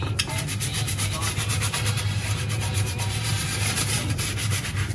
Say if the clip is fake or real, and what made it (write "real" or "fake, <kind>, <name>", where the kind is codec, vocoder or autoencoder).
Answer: fake, vocoder, BigVGAN v2